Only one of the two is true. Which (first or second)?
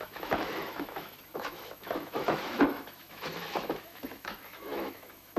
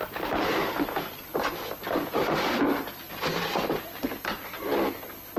second